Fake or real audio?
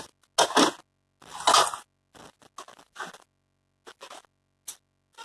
real